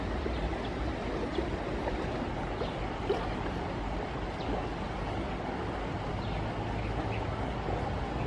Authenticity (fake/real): real